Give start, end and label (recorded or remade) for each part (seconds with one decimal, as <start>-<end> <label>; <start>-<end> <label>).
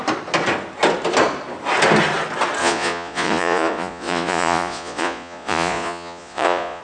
0.0-2.6 recorded; 2.6-6.8 remade